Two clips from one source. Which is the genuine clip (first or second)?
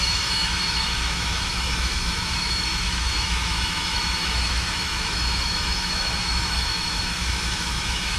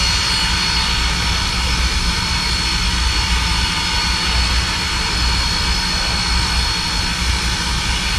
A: second